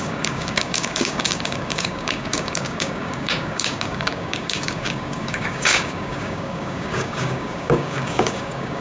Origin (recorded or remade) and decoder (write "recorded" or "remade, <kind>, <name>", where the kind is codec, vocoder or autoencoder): remade, codec, DAC